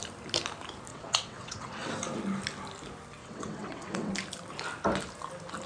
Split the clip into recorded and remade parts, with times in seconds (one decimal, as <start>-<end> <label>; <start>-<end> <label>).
0.0-0.9 recorded; 0.9-1.9 remade; 1.9-3.2 recorded; 3.2-4.1 remade; 4.1-5.7 recorded